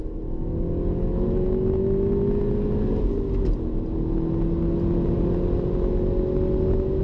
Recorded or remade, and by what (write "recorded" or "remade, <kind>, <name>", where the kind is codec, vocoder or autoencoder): recorded